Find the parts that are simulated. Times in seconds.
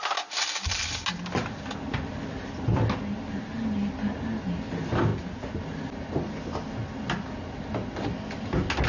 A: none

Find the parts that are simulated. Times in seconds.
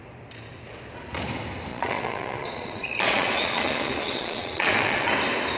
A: 1.7-5.1 (vocoder, Vocos)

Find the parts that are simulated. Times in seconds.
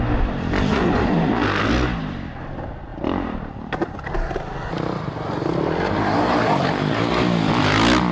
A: 0.7-1.3 (vocoder, Vocos)